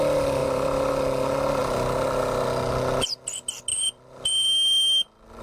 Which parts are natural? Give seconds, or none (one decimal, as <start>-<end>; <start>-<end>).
0.0-0.4; 0.9-3.7; 4.3-5.4